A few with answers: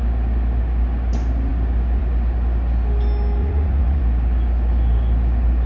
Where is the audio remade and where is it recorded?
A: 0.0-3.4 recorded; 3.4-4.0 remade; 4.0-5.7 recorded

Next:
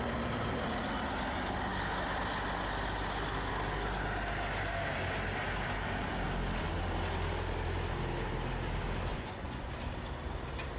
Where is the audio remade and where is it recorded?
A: 0.0-9.1 recorded; 9.1-9.7 remade; 9.7-10.8 recorded